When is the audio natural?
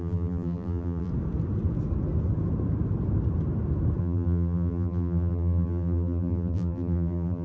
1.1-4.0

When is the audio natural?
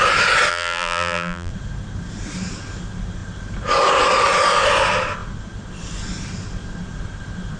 0.0-0.5; 1.5-7.6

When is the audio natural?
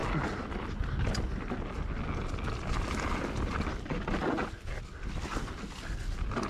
0.8-6.5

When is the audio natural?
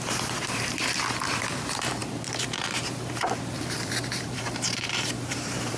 none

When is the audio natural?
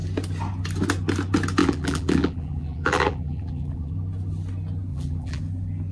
0.0-1.6; 3.9-4.9; 5.4-5.9